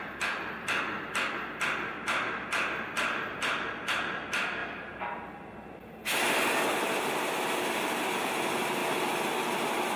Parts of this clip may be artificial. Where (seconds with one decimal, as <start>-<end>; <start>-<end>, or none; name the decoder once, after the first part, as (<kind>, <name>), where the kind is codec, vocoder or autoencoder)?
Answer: none